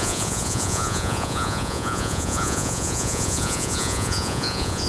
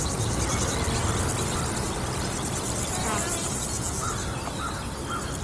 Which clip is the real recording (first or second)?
second